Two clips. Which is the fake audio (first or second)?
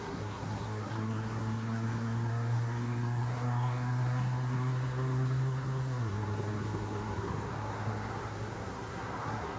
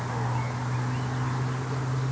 first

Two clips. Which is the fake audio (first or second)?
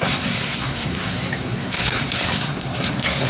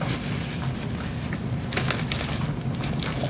first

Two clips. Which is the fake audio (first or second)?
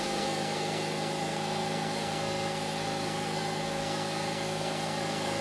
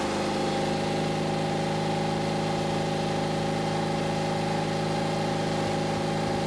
first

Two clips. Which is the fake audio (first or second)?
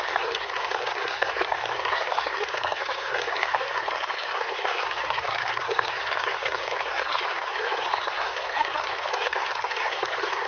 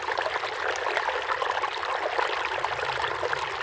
first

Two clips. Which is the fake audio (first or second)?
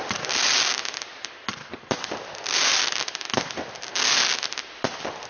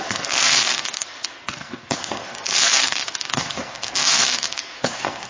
second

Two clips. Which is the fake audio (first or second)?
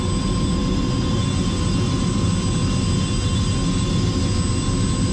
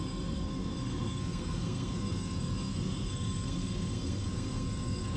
second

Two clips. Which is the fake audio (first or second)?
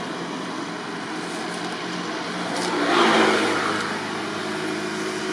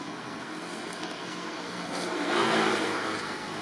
second